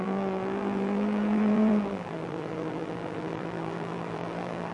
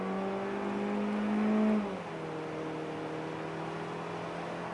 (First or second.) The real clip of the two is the second